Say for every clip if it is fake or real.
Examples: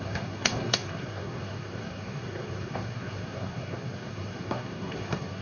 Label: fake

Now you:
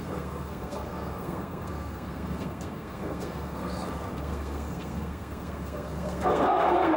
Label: fake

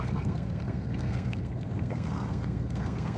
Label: fake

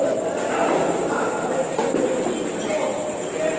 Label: real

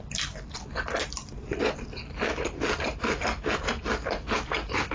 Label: real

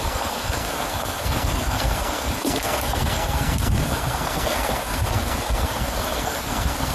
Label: fake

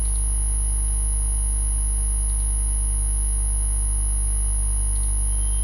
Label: real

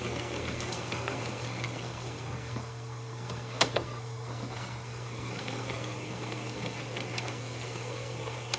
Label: fake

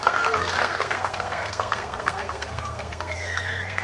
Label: fake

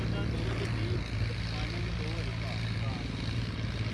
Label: real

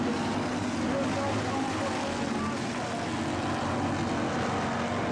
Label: real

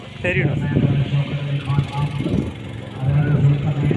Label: real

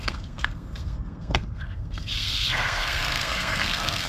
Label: fake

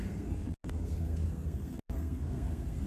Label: fake